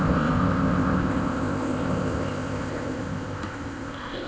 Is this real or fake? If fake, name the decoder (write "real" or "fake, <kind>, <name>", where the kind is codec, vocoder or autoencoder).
fake, codec, ZipCodec